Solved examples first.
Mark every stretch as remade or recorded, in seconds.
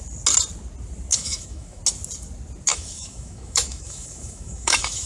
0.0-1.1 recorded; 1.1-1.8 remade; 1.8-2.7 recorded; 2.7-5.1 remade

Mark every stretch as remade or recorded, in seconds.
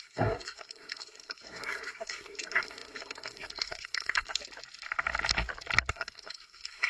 0.0-4.4 remade; 4.4-5.9 recorded; 5.9-6.9 remade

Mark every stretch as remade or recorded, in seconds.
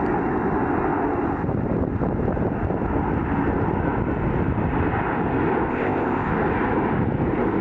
0.0-5.7 recorded; 5.7-6.3 remade; 6.3-7.6 recorded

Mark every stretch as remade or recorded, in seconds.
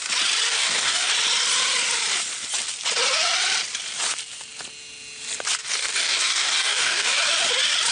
0.0-0.5 recorded; 0.5-1.1 remade; 1.1-5.6 recorded; 5.6-7.2 remade; 7.2-7.9 recorded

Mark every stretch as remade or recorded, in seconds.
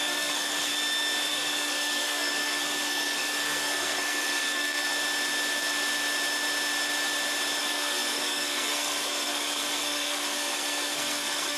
0.0-0.7 remade; 0.7-1.3 recorded; 1.3-4.9 remade; 4.9-7.6 recorded; 7.6-11.6 remade